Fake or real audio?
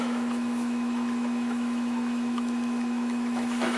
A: fake